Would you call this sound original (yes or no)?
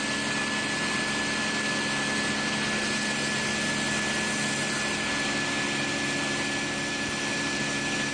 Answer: yes